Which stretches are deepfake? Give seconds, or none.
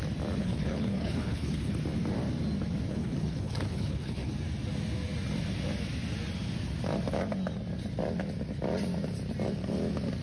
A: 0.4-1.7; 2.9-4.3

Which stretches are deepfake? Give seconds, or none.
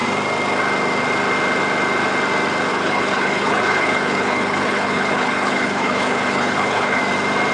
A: 2.7-7.0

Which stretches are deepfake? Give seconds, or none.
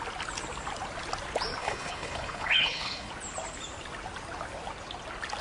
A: 1.6-3.1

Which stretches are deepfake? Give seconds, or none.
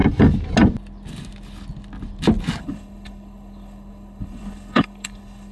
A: 2.6-5.5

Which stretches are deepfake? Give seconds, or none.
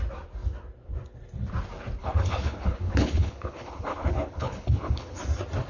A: 2.0-5.2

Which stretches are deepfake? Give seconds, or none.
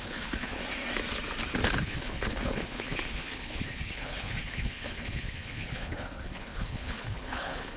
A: 0.0-0.6; 1.8-7.8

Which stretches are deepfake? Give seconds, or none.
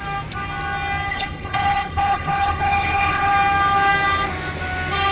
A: 1.1-3.3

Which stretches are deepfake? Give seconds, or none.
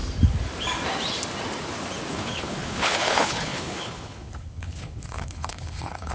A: 2.1-6.1